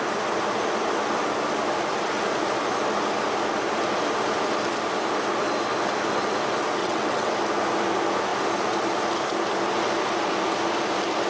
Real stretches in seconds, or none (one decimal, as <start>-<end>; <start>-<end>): 0.0-6.8; 7.3-11.3